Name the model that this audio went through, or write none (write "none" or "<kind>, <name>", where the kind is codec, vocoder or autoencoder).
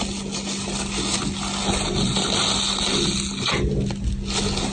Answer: none